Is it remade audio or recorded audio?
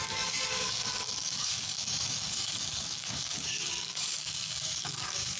remade